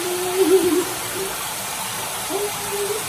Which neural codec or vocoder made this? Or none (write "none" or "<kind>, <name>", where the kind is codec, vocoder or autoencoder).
vocoder, BigVGAN v2